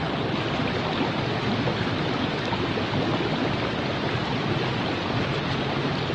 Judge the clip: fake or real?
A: real